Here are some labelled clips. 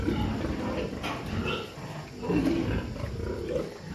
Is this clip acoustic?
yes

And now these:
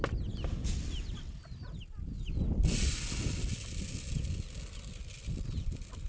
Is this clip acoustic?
yes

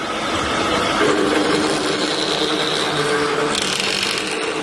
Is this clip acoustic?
yes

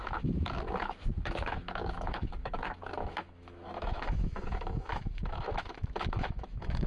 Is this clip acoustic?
no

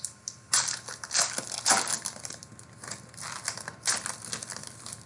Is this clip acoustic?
yes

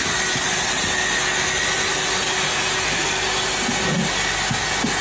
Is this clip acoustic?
yes